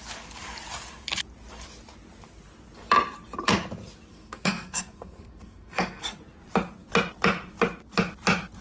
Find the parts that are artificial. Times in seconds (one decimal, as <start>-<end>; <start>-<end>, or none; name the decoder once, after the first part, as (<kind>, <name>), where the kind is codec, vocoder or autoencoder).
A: 4.1-6.0 (codec, SNAC)